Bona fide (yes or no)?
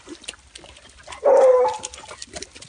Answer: yes